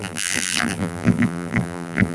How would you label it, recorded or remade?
remade